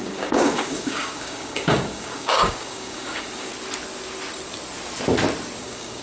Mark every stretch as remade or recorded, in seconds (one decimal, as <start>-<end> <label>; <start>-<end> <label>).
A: 0.0-3.5 remade; 3.5-5.6 recorded; 5.6-6.0 remade